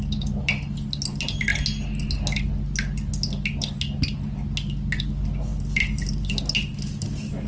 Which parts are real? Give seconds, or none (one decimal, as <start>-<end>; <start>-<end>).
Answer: 0.0-7.5